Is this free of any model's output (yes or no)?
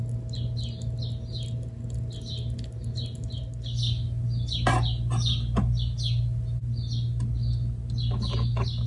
yes